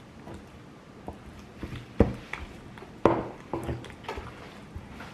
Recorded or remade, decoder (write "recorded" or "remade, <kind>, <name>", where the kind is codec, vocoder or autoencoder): recorded